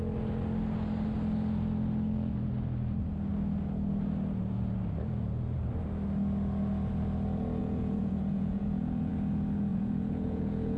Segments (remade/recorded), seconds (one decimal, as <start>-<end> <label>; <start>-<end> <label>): 0.0-7.6 recorded; 7.6-9.1 remade; 9.1-9.7 recorded; 9.7-10.8 remade